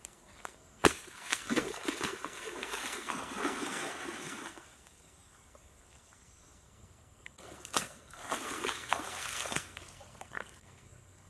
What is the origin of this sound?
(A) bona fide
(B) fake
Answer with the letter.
B